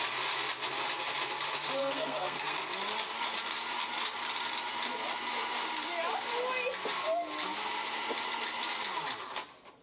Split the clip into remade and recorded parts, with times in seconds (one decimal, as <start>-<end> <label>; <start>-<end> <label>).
0.0-1.8 recorded; 1.8-2.9 remade; 2.9-9.8 recorded